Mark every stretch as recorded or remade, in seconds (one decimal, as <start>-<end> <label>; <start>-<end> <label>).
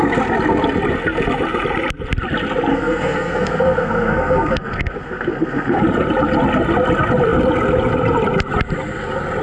0.0-2.7 recorded; 2.7-5.8 remade; 5.8-9.4 recorded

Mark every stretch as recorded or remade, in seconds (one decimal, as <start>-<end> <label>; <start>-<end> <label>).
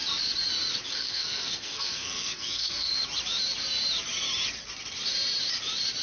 0.0-0.9 recorded; 0.9-2.9 remade; 2.9-6.0 recorded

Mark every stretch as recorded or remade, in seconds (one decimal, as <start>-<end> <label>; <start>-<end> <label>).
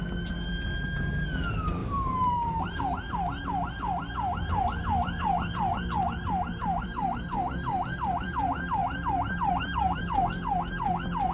0.0-1.8 recorded; 1.8-2.8 remade; 2.8-5.7 recorded; 5.7-10.0 remade; 10.0-11.3 recorded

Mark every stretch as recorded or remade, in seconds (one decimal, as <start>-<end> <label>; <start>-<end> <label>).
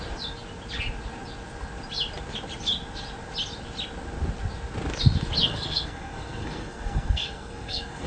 0.0-5.4 recorded; 5.4-8.1 remade